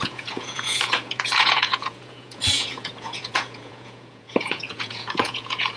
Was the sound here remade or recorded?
remade